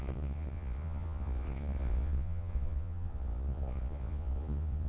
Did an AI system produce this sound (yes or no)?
yes